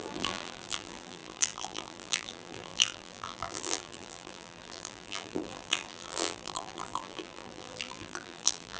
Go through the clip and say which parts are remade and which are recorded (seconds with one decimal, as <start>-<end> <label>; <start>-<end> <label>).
0.0-8.8 remade